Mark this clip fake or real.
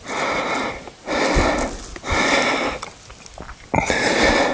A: real